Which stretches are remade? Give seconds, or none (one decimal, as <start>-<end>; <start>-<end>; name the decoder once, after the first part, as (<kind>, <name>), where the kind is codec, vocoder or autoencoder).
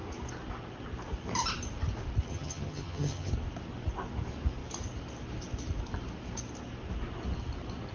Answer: 2.3-3.3 (vocoder, HiFi-GAN)